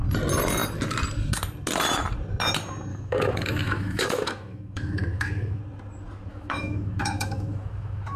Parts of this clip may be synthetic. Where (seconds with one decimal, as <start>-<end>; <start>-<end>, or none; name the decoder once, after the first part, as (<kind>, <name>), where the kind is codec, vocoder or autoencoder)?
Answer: 2.9-5.6 (autoencoder, DAC-VAE); 6.3-8.2